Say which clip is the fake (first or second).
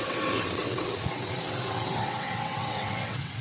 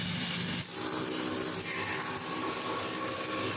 first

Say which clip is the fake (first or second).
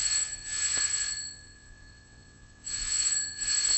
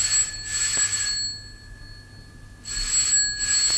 first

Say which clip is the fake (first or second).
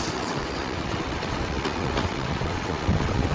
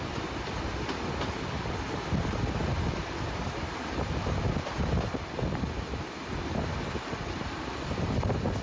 first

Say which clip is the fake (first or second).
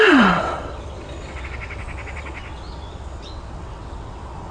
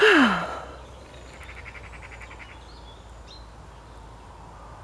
first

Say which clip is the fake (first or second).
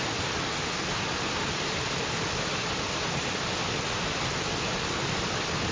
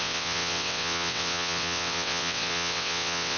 second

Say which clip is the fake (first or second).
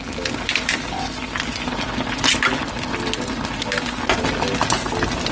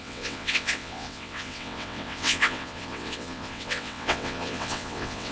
second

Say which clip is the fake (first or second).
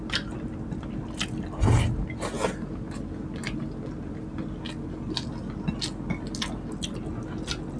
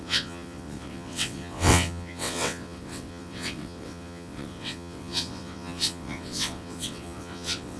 second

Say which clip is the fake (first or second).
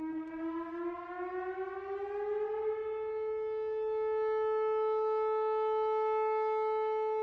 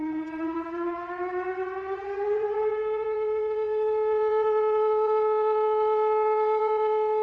second